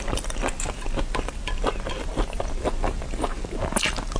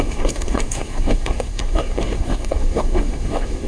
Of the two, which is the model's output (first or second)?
second